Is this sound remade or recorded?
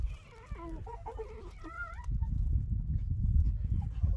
recorded